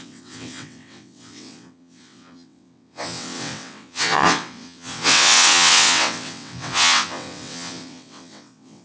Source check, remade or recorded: remade